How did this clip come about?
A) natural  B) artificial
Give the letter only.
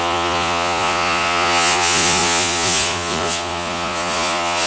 B